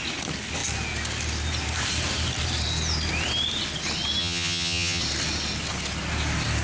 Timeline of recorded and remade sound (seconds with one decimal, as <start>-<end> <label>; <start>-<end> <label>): 0.0-4.2 recorded; 4.2-5.0 remade; 5.0-6.6 recorded